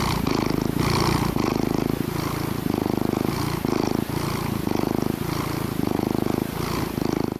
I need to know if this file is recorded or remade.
recorded